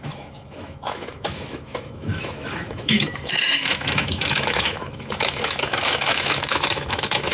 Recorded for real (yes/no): no